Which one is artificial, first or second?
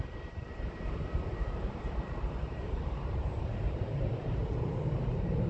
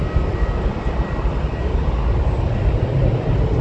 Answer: first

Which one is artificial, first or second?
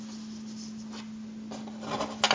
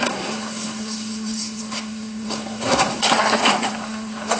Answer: second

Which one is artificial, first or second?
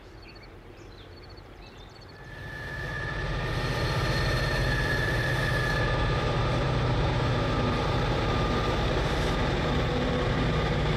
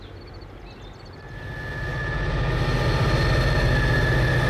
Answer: first